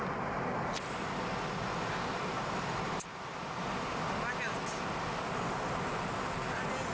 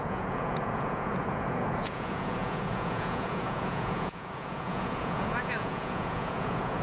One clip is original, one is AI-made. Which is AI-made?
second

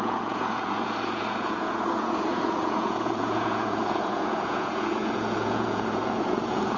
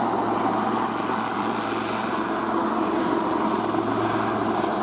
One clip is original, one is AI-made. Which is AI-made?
first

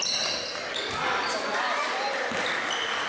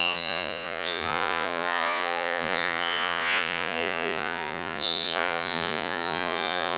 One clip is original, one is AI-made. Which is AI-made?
second